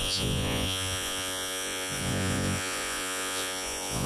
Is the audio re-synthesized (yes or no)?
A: yes